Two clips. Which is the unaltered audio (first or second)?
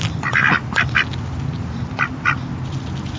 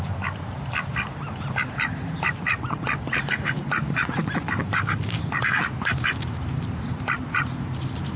first